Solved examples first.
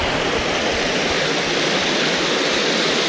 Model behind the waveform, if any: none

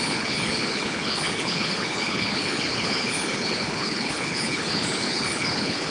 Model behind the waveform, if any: codec, HILCodec